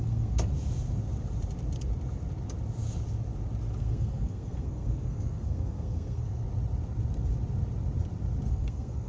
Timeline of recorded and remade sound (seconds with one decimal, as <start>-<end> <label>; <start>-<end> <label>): 0.0-0.5 remade; 0.5-3.8 recorded; 3.8-6.4 remade; 6.4-8.5 recorded; 8.5-9.1 remade

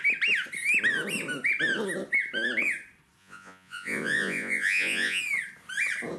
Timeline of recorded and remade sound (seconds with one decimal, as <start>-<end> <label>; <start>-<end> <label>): 0.0-3.2 recorded; 3.2-5.2 remade; 5.2-6.2 recorded

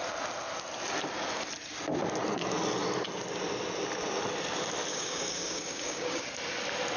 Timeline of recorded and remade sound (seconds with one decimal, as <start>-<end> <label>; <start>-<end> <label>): 0.0-4.9 recorded; 4.9-6.2 remade; 6.2-7.0 recorded

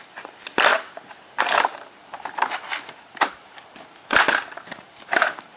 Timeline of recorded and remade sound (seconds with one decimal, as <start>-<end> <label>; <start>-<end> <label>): 0.0-0.7 remade; 0.7-1.4 recorded; 1.4-2.0 remade; 2.0-4.5 recorded; 4.5-5.6 remade

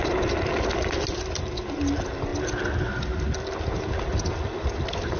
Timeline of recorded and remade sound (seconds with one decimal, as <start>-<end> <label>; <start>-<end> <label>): 0.0-5.2 recorded

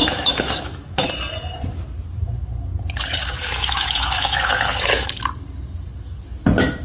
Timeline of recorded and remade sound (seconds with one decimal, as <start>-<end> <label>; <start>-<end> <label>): 0.0-1.1 remade; 1.1-3.2 recorded; 3.2-5.2 remade; 5.2-6.8 recorded